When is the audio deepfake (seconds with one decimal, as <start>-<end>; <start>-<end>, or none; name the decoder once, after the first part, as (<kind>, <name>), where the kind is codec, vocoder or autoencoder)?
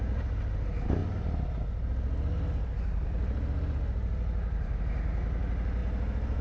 1.0-4.8 (vocoder, BigVGAN v2)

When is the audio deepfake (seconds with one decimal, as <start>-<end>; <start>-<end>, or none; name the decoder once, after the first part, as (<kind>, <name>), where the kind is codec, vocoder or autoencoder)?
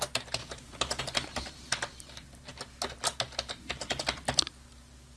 0.4-1.0 (vocoder, BigVGAN v2)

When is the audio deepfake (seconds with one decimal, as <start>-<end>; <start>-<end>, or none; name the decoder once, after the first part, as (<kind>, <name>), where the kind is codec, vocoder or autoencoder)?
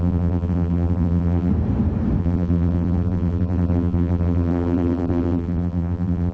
0.0-1.5 (vocoder, BigVGAN v2); 2.2-6.3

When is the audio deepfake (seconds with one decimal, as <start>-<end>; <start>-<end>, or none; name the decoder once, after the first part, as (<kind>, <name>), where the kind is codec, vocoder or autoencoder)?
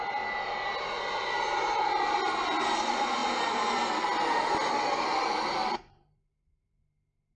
5.6-6.8 (vocoder, BigVGAN v2)